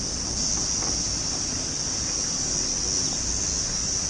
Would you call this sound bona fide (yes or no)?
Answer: yes